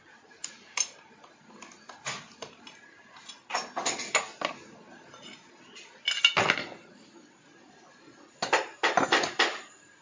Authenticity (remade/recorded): recorded